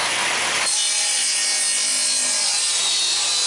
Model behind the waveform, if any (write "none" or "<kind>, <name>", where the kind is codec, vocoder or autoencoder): none